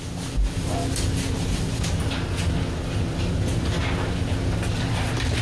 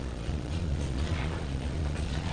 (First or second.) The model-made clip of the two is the second